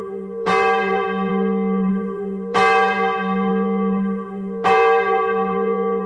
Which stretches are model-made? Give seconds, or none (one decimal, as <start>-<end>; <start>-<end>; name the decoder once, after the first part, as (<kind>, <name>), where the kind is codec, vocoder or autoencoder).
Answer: 0.0-6.1 (vocoder, BigVGAN v2)